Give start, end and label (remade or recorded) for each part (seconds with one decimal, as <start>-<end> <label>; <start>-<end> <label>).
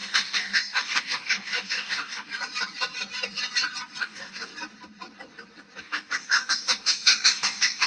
0.0-2.3 remade; 2.3-4.0 recorded; 4.0-4.5 remade; 4.5-5.8 recorded; 5.8-7.9 remade